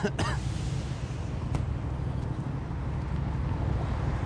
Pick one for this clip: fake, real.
real